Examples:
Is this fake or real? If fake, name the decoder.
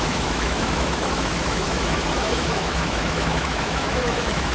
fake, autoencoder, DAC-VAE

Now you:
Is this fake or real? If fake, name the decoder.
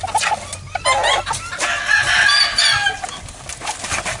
real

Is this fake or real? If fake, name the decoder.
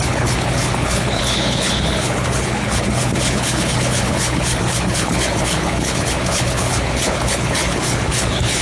fake, codec, HILCodec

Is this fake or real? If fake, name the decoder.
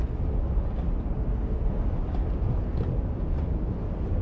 real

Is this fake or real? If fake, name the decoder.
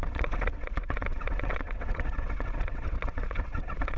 fake, vocoder, WaveNeXt